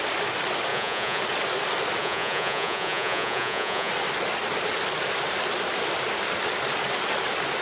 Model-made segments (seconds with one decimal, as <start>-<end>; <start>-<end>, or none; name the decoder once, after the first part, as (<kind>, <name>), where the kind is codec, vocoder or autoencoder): 0.7-1.2 (vocoder, Vocos); 2.0-3.9